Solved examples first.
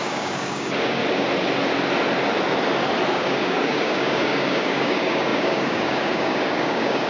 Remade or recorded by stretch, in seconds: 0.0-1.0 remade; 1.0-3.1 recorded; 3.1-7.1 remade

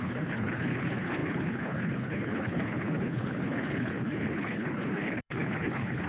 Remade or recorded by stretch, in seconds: 0.0-6.1 remade

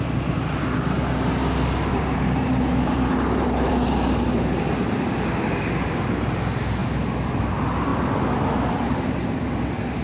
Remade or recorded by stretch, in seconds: 0.0-1.9 recorded; 1.9-3.7 remade; 3.7-10.0 recorded